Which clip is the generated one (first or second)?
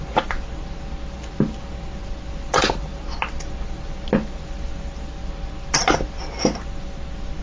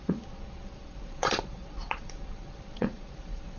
second